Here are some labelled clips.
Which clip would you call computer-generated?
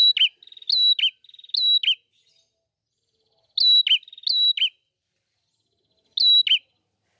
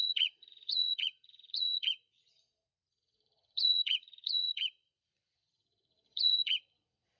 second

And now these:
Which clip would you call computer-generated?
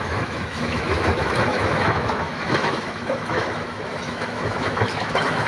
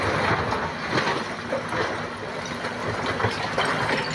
first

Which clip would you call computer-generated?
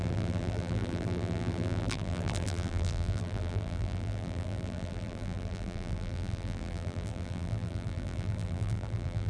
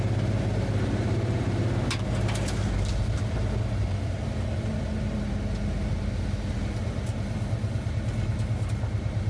first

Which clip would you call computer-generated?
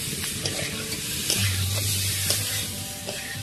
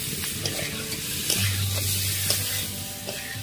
first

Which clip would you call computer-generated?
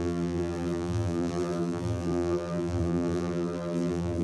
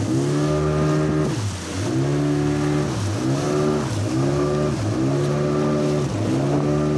first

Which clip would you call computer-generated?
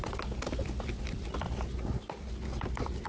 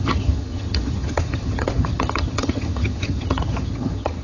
second